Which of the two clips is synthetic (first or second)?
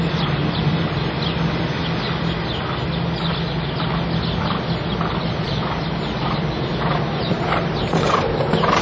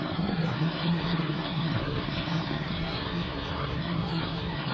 second